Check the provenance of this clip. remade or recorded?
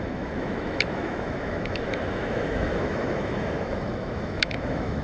remade